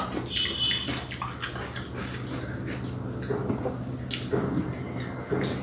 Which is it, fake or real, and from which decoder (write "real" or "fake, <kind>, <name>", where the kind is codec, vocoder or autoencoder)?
real